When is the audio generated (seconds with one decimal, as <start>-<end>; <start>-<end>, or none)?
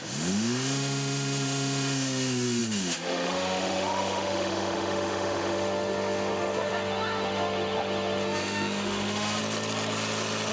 0.0-9.4